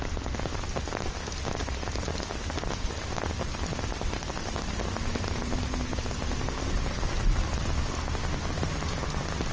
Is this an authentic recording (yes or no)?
no